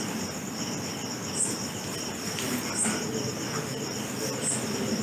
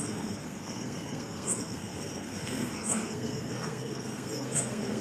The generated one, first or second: second